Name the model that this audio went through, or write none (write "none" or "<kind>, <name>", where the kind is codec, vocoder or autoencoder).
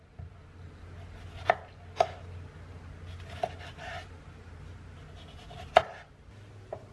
none